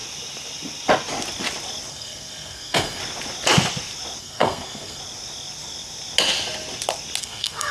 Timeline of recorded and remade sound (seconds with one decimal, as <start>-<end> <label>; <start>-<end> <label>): 0.0-1.9 recorded; 1.9-3.0 remade; 3.0-4.2 recorded; 4.2-5.0 remade; 5.0-7.2 recorded; 7.2-7.7 remade